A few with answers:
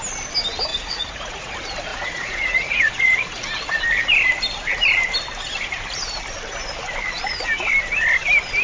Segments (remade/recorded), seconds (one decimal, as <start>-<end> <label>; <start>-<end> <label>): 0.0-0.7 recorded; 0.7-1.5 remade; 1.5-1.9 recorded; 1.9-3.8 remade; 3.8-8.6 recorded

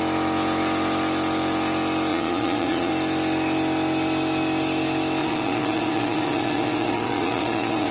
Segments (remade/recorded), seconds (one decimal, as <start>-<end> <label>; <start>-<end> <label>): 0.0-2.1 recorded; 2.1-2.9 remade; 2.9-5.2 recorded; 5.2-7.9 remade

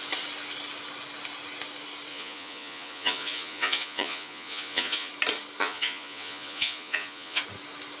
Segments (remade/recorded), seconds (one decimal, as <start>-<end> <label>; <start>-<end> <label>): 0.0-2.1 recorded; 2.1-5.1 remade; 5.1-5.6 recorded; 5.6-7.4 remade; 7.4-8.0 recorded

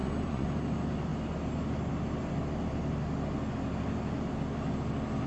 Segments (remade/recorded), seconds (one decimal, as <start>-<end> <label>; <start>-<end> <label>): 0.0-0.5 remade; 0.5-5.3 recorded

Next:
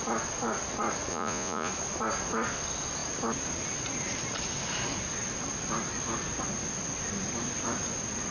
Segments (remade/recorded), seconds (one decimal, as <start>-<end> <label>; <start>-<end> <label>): 0.0-1.1 recorded; 1.1-1.7 remade; 1.7-8.3 recorded

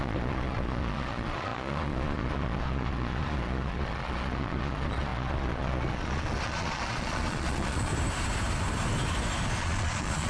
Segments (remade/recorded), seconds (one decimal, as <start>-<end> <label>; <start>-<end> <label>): 0.0-7.9 remade; 7.9-9.6 recorded; 9.6-10.3 remade

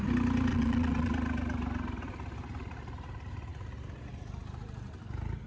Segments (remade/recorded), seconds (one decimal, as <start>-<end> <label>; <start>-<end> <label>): 0.0-0.5 recorded; 0.5-1.1 remade; 1.1-5.5 recorded

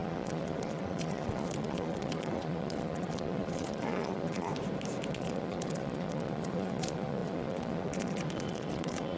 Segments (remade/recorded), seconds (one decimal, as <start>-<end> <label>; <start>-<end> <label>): 0.0-4.5 remade; 4.5-5.1 recorded; 5.1-9.2 remade